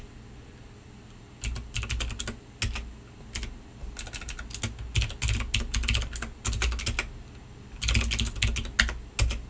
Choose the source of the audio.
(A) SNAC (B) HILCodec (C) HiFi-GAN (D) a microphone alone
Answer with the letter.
D